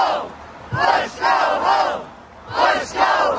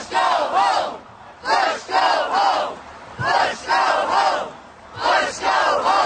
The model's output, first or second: second